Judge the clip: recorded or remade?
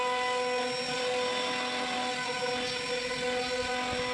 recorded